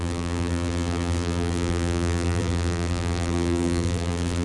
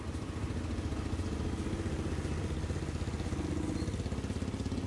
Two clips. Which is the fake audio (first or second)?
first